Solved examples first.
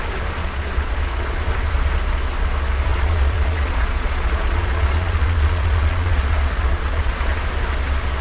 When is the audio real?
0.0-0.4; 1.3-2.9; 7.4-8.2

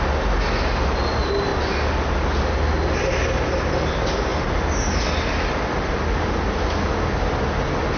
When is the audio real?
0.0-8.0

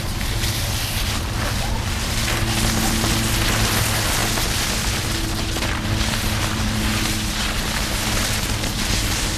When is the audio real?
0.0-9.4

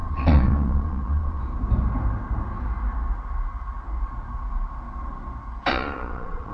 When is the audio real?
1.4-5.7

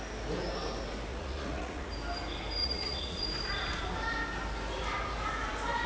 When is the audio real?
0.0-1.1; 1.9-2.6; 3.2-5.9

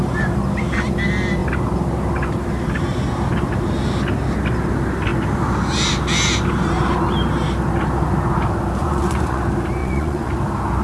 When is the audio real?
0.0-8.8; 9.4-9.8; 10.3-10.8